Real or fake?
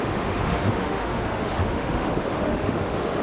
fake